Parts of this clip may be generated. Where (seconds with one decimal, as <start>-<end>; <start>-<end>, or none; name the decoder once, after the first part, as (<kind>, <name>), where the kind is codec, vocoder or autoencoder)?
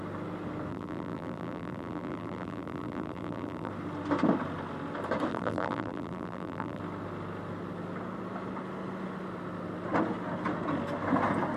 0.7-3.7 (vocoder, BigVGAN v2); 5.3-6.8